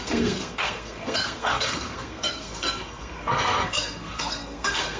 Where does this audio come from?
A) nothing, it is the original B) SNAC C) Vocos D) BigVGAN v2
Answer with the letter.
B